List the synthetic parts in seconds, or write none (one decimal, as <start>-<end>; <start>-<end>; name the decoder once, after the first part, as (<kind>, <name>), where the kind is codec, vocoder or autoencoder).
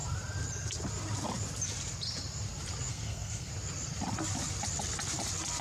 2.9-3.5 (codec, SNAC)